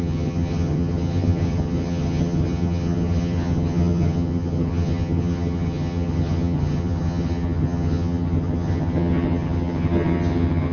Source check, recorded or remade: remade